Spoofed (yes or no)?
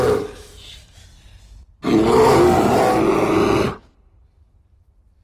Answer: no